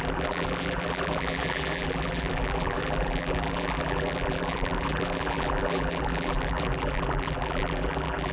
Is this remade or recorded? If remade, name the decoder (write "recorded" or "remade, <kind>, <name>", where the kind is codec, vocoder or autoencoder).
remade, vocoder, BigVGAN v2